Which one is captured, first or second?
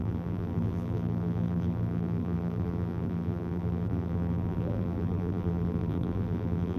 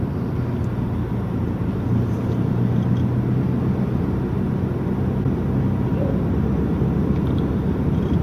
second